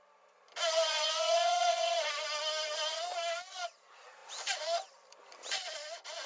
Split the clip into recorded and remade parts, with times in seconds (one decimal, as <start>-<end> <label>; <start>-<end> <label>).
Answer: 0.0-0.9 recorded; 0.9-2.1 remade; 2.1-6.3 recorded